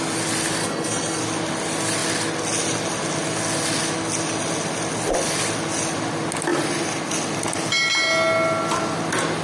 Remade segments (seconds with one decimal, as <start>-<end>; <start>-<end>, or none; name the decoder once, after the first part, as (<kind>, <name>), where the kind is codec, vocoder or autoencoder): 0.6-1.2 (codec, HILCodec)

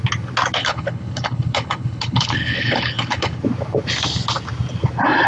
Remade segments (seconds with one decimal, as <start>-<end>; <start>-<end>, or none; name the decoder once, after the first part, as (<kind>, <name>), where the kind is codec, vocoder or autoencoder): 0.6-3.4 (codec, HILCodec)